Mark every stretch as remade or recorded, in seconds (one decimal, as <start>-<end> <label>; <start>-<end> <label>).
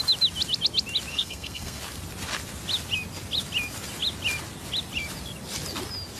0.0-1.1 recorded; 1.1-1.8 remade; 1.8-6.2 recorded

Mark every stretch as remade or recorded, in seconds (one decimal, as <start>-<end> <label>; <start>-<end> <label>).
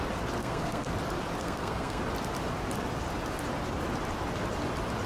0.0-0.4 recorded; 0.4-0.9 remade; 0.9-1.4 recorded; 1.4-2.0 remade; 2.0-5.1 recorded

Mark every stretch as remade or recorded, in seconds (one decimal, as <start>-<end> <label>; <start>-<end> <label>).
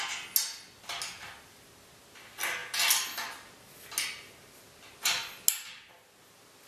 0.0-6.7 recorded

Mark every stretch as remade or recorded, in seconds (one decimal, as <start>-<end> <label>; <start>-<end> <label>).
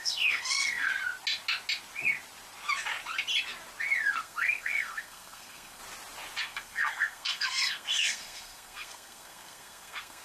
0.0-0.9 remade; 0.9-4.1 recorded; 4.1-5.8 remade; 5.8-6.4 recorded; 6.4-10.2 remade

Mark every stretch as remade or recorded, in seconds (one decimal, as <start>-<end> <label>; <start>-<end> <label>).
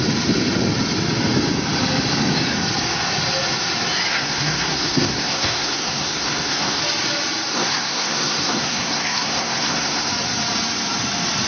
0.0-4.1 recorded; 4.1-6.8 remade; 6.8-7.5 recorded; 7.5-10.1 remade; 10.1-11.5 recorded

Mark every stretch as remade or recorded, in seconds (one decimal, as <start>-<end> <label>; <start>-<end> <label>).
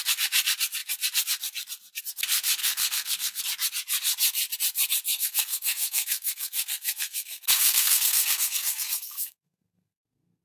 0.0-2.6 recorded; 2.6-3.4 remade; 3.4-5.1 recorded; 5.1-10.4 remade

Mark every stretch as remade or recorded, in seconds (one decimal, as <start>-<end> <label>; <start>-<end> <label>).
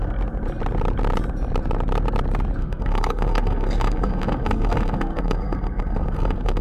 0.0-2.6 recorded; 2.6-6.6 remade